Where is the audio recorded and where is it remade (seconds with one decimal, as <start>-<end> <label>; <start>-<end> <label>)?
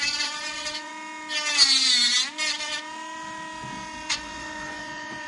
0.0-0.9 remade; 0.9-4.1 recorded; 4.1-5.3 remade